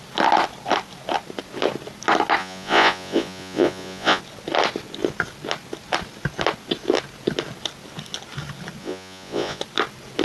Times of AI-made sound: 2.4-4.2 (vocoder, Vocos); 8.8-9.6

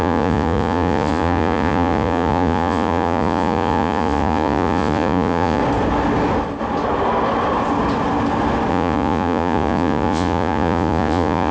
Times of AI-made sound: 0.0-5.6 (vocoder, Vocos); 8.7-11.5

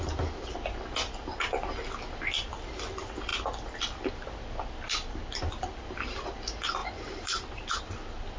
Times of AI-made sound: 6.8-7.8 (vocoder, BigVGAN v2)

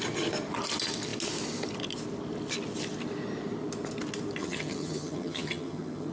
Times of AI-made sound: 4.4-6.1 (vocoder, HiFi-GAN)

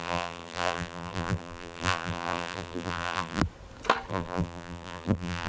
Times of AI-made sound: 0.0-3.4 (vocoder, BigVGAN v2); 4.1-5.5

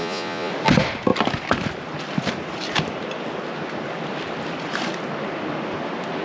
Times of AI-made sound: 0.0-0.5 (vocoder, Vocos)

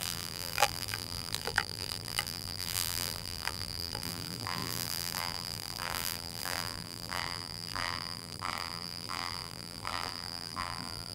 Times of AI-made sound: 0.0-11.1 (vocoder, BigVGAN v2)

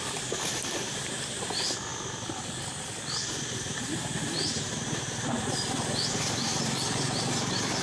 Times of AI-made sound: none